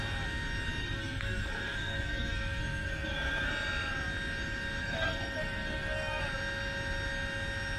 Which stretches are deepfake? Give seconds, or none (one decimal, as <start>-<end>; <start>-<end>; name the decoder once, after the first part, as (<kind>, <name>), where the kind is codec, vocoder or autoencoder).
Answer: 0.8-3.5 (codec, SNAC); 4.8-6.2

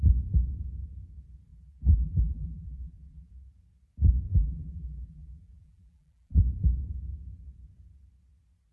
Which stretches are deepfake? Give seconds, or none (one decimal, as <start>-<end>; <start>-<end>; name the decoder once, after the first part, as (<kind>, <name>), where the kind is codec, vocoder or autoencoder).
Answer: 1.5-3.3 (vocoder, BigVGAN v2); 4.3-6.4